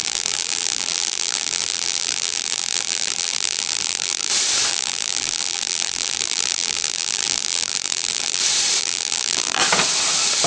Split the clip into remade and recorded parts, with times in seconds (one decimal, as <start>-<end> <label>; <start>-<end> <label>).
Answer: 0.0-4.3 remade; 4.3-4.7 recorded; 4.7-8.4 remade; 8.4-8.8 recorded; 8.8-9.6 remade; 9.6-10.5 recorded